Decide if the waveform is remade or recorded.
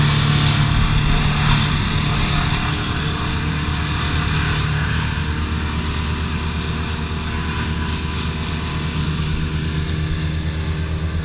recorded